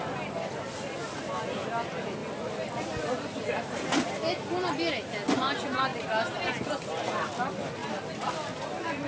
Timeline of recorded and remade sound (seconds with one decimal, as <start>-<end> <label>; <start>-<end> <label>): 0.0-9.1 recorded